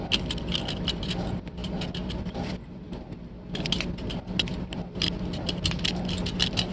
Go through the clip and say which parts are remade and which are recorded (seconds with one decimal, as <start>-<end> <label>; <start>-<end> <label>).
0.0-6.7 recorded